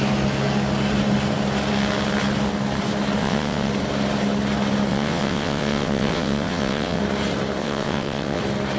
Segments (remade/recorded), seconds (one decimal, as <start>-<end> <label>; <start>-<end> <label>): 0.0-3.2 recorded; 3.2-3.7 remade; 3.7-4.9 recorded; 4.9-7.0 remade; 7.0-7.6 recorded; 7.6-8.4 remade; 8.4-8.8 recorded